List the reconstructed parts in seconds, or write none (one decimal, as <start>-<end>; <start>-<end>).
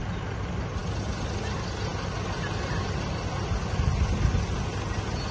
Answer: none